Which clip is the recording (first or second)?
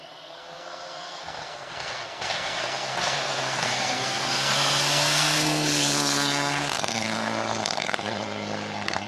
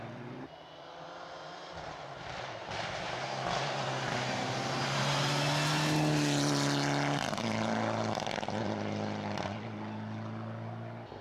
second